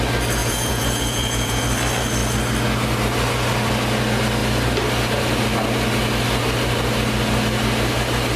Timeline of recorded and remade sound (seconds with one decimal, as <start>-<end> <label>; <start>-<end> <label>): 0.0-0.4 recorded; 0.4-1.6 remade; 1.6-8.4 recorded